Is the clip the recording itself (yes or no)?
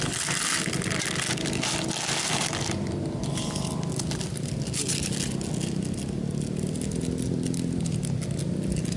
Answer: yes